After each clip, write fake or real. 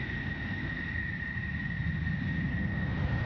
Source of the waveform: real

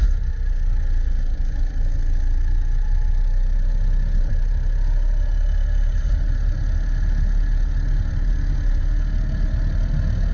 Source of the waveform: real